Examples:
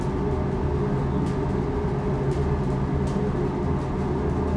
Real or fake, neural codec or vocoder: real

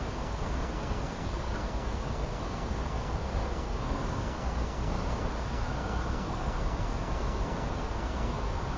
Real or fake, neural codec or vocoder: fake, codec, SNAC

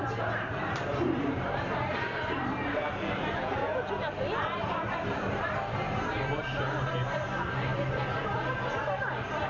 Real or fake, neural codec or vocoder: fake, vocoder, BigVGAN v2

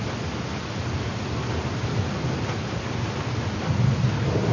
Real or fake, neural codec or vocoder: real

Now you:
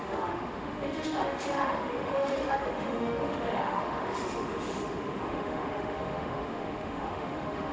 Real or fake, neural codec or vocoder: fake, autoencoder, DAC-VAE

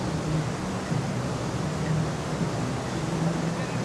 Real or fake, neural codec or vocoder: real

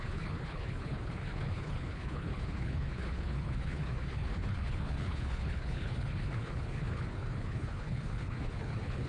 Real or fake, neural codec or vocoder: fake, codec, HILCodec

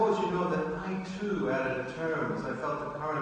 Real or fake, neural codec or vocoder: real